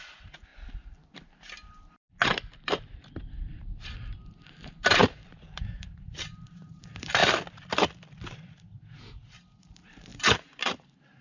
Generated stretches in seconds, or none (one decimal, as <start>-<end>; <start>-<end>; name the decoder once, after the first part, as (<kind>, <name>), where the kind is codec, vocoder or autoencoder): 0.0-0.5 (vocoder, BigVGAN v2); 3.5-7.2; 9.6-11.2